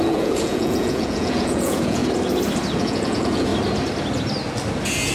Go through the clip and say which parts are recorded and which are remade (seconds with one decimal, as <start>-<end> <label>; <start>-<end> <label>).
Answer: 0.0-2.0 remade; 2.0-2.8 recorded; 2.8-3.5 remade; 3.5-5.1 recorded